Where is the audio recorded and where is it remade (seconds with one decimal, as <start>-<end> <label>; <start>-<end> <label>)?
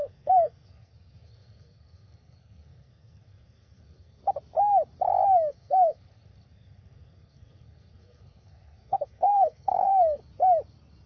0.0-4.2 remade; 4.2-5.5 recorded; 5.5-10.2 remade; 10.2-11.1 recorded